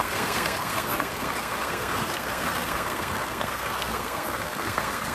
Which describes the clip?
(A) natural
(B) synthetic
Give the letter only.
B